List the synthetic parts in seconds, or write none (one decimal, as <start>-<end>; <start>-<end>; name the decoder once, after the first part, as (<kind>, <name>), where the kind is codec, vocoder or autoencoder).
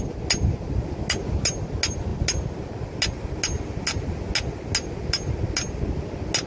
none